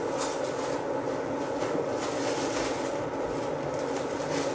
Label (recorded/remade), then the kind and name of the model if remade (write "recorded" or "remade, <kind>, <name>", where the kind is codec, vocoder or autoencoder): recorded